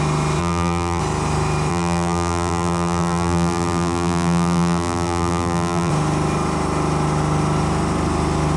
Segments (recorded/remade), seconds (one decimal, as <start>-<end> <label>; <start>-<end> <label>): 0.0-0.4 recorded; 0.4-1.0 remade; 1.0-1.7 recorded; 1.7-5.9 remade; 5.9-8.6 recorded